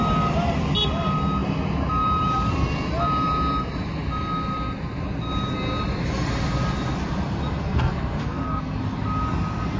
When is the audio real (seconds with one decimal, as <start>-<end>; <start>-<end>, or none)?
0.0-7.6; 8.8-9.8